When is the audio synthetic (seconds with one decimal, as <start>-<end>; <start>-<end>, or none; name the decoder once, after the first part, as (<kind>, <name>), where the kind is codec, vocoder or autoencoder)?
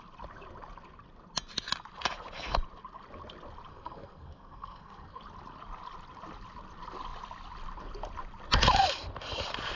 3.7-5.2 (codec, SNAC)